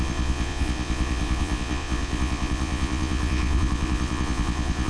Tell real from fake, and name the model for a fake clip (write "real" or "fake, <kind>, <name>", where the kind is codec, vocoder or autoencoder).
fake, vocoder, Vocos